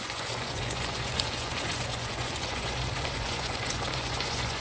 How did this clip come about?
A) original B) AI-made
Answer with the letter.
B